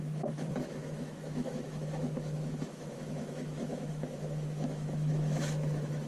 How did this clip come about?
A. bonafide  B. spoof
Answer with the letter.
B